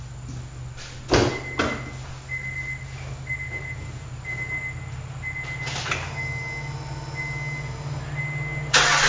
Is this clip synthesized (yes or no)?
no